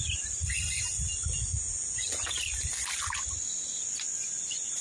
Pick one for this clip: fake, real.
real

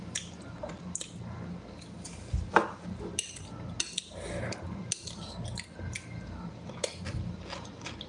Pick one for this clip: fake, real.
real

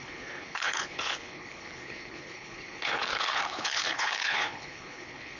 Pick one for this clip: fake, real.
fake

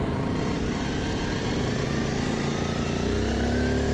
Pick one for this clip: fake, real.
real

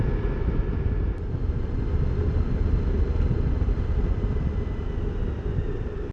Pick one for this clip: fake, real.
real